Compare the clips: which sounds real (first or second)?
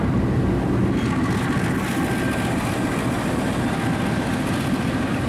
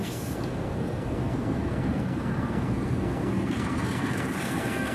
first